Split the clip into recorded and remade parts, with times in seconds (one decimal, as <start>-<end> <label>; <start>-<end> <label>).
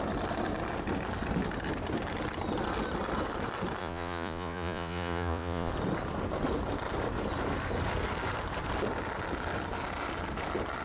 0.0-3.8 recorded; 3.8-5.7 remade; 5.7-10.8 recorded